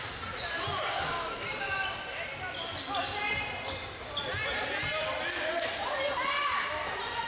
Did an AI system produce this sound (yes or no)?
no